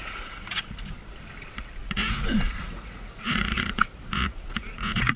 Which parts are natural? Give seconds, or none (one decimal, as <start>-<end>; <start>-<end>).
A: 1.0-1.8